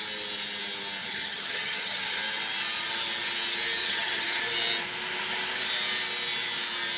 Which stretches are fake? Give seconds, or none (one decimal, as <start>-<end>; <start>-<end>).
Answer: 1.0-2.2; 3.8-4.4